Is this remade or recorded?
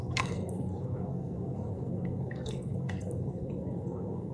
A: remade